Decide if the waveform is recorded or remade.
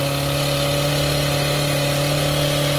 recorded